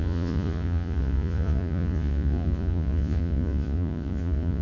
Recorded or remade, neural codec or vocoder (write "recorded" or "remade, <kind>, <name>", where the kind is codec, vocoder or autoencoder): remade, vocoder, Vocos